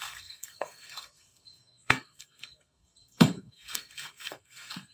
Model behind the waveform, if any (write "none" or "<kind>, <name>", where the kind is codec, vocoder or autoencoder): codec, SNAC